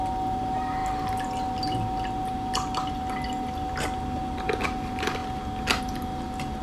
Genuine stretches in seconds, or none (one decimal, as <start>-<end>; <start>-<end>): 0.0-6.6